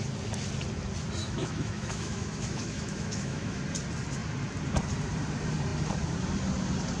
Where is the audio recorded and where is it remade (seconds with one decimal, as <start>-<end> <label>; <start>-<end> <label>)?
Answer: 0.0-1.2 recorded; 1.2-3.6 remade; 3.6-7.0 recorded